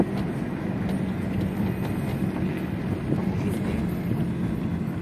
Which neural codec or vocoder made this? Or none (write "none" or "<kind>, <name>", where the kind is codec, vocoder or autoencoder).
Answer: none